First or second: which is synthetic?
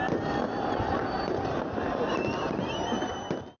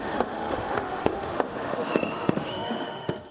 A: second